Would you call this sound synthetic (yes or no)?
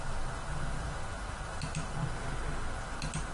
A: no